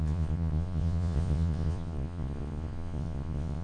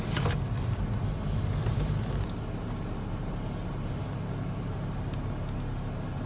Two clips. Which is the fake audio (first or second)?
first